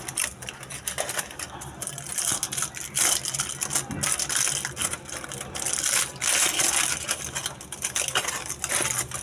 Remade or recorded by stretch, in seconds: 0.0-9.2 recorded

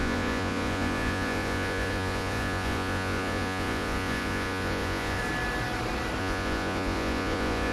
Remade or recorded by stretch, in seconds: 0.0-5.2 remade; 5.2-6.2 recorded; 6.2-7.7 remade

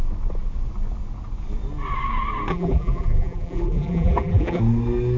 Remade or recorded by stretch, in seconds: 0.0-2.5 recorded; 2.5-4.6 remade; 4.6-5.2 recorded